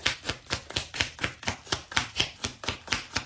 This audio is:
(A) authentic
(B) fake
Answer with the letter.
A